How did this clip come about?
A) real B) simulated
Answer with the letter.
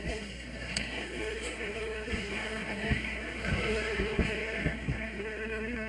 B